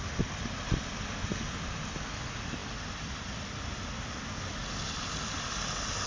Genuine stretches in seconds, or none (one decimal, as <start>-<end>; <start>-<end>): 0.0-6.1